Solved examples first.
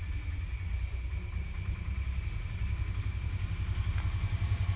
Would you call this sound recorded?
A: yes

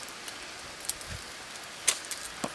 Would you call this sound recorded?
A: yes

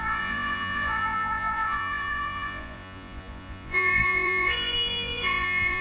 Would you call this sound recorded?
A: no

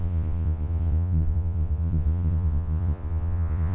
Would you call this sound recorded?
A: no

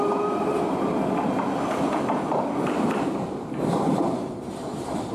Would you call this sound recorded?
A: yes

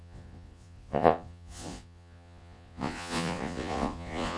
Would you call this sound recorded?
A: no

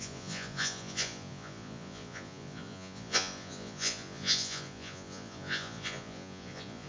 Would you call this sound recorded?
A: no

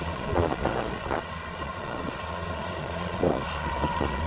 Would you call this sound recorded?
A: no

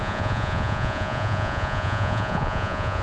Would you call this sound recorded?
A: no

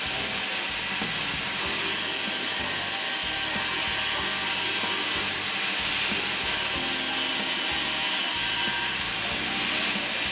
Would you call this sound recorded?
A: yes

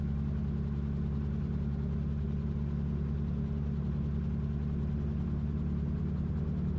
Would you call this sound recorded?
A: yes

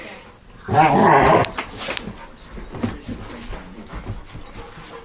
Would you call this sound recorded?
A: yes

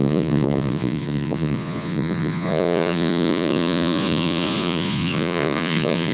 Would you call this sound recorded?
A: no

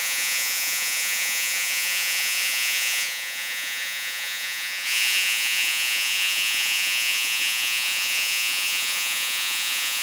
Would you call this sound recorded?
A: no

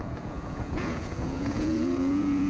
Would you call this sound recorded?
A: no